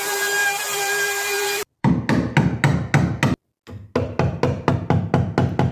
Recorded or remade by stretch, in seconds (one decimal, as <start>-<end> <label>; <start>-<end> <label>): 0.0-0.4 recorded; 0.4-1.9 remade; 1.9-5.7 recorded